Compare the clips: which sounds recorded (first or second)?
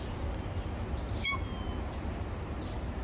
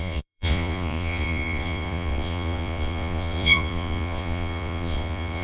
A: first